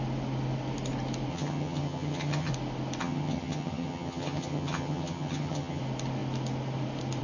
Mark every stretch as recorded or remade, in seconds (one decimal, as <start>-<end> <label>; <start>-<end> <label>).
0.0-1.3 recorded; 1.3-2.5 remade; 2.5-3.0 recorded; 3.0-5.8 remade; 5.8-7.2 recorded